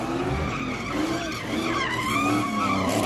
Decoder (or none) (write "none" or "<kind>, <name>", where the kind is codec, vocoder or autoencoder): none